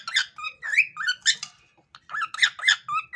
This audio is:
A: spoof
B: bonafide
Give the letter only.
B